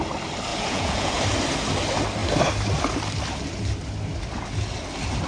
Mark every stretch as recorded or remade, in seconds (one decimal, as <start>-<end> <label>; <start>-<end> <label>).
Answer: 0.0-0.5 recorded; 0.5-1.1 remade; 1.1-5.3 recorded